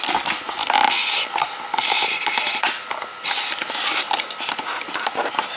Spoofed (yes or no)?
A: no